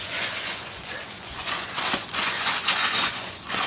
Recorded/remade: remade